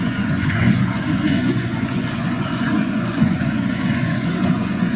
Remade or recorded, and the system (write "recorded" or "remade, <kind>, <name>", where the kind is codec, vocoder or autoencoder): remade, vocoder, Vocos